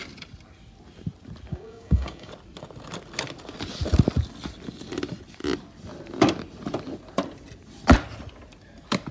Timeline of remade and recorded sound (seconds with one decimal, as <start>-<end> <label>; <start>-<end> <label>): 0.0-1.5 recorded; 1.5-2.3 remade; 2.3-9.1 recorded